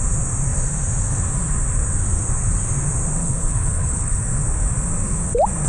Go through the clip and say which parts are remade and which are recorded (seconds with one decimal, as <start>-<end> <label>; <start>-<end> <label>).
0.0-3.2 recorded; 3.2-4.2 remade; 4.2-5.7 recorded